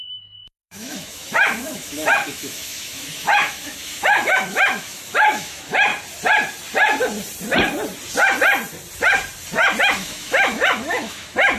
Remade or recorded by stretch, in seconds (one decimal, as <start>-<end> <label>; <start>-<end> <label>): 0.0-5.9 remade; 5.9-9.8 recorded; 9.8-11.6 remade